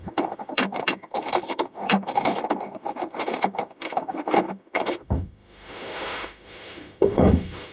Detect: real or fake fake